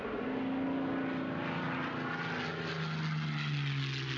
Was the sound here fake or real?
real